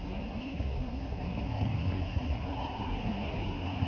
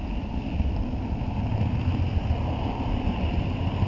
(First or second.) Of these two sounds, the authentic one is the second